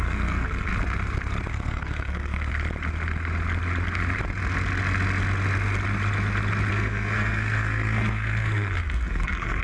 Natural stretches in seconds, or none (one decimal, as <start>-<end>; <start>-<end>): 0.7-1.5; 2.5-6.7